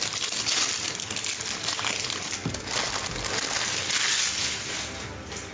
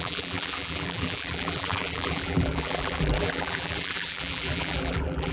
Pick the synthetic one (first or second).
second